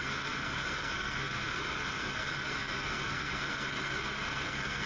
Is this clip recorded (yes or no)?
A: no